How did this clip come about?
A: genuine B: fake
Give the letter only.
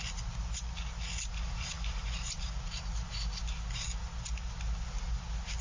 A